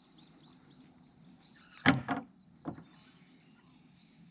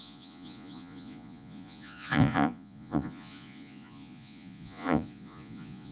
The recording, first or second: first